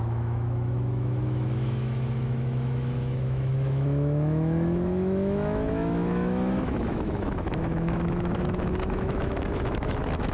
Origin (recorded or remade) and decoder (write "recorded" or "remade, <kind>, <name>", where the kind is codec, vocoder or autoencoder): remade, autoencoder, DAC-VAE